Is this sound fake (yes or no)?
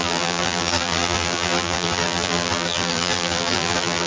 yes